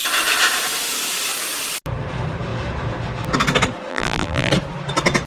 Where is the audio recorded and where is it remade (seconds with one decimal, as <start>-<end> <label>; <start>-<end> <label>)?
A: 0.0-3.9 recorded; 3.9-4.5 remade; 4.5-5.3 recorded